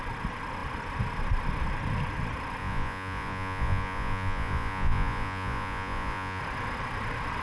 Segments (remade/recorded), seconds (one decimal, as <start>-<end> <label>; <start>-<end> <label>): 0.0-2.6 recorded; 2.6-6.4 remade; 6.4-7.4 recorded